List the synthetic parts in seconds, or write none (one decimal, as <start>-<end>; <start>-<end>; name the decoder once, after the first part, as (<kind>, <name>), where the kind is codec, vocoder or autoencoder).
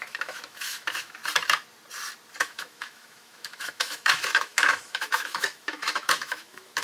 0.0-1.2 (autoencoder, DAC-VAE); 2.4-6.8